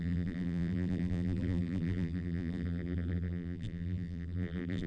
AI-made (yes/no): yes